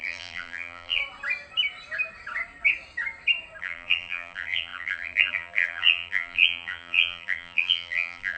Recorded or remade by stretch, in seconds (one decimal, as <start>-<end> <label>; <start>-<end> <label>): 0.0-1.0 remade; 1.0-3.6 recorded; 3.6-8.4 remade